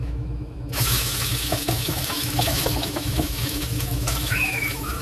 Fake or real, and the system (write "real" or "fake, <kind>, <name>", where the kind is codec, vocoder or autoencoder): fake, autoencoder, DAC-VAE